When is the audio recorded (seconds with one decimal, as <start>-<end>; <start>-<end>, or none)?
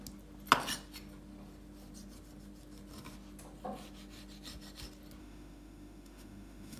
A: 0.0-5.2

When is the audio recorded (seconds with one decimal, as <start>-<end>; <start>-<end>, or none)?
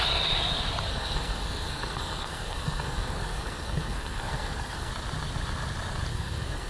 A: 0.0-0.9; 4.9-6.1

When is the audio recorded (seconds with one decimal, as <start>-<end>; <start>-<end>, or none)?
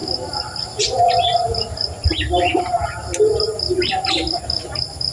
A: 0.0-5.1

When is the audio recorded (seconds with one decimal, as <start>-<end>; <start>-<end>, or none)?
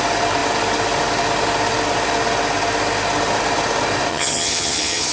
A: 0.0-4.1